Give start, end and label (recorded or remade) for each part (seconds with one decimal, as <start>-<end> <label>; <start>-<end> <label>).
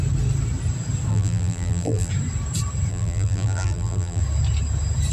0.0-1.1 recorded; 1.1-2.1 remade; 2.1-2.9 recorded; 2.9-4.2 remade; 4.2-5.1 recorded